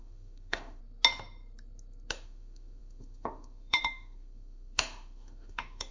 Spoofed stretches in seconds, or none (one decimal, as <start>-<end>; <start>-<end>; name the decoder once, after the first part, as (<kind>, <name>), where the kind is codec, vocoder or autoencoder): 0.0-0.8 (autoencoder, DAC-VAE); 2.1-5.9